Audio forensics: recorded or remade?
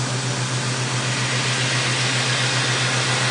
recorded